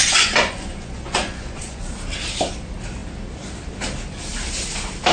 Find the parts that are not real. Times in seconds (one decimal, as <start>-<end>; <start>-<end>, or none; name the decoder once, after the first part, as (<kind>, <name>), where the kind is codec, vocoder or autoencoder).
0.0-1.8 (vocoder, Vocos)